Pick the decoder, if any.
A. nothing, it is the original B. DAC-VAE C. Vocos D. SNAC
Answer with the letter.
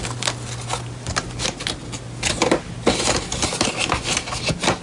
A